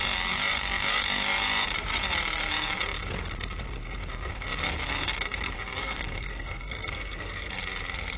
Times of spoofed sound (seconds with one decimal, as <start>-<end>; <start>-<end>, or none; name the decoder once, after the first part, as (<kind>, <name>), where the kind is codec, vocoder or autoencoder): 5.8-7.5 (codec, SNAC)

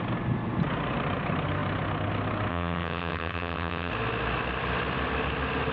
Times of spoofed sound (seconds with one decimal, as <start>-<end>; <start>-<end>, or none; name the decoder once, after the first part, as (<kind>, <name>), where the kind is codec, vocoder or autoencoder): 2.5-3.9 (vocoder, HiFi-GAN)

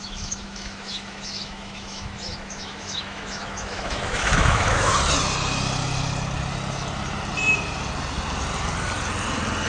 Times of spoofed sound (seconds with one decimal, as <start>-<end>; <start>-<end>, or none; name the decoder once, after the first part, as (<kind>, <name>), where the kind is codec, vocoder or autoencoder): 0.0-4.9 (autoencoder, DAC-VAE)

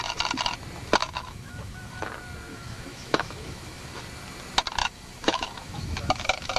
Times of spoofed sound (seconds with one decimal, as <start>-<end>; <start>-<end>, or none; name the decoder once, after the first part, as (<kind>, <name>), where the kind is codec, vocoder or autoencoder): 1.0-2.0 (autoencoder, DAC-VAE); 2.5-4.0; 4.8-6.6

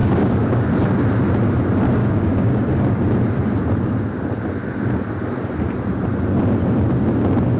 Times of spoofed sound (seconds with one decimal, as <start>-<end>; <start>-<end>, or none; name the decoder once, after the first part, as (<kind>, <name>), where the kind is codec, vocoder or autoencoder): 0.0-0.7 (codec, DAC); 2.0-2.7

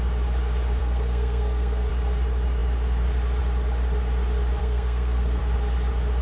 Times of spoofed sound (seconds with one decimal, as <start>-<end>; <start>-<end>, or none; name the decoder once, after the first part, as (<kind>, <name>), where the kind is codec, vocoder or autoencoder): 0.8-1.9 (codec, SNAC); 4.6-5.4